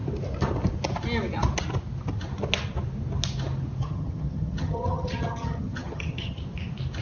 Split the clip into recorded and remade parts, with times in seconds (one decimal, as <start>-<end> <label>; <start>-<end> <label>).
0.0-3.8 recorded; 3.8-6.4 remade; 6.4-7.0 recorded